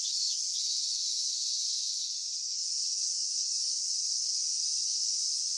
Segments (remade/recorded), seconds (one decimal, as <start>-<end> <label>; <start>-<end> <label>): 0.0-1.4 remade; 1.4-1.9 recorded; 1.9-5.6 remade